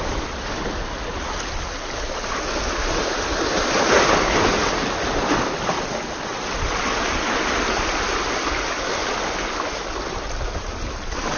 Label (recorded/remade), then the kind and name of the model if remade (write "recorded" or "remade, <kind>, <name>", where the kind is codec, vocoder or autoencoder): recorded